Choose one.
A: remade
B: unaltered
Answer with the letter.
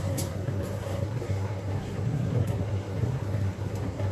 A